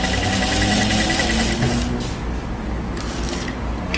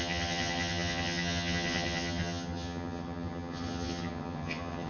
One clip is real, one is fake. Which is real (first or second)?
first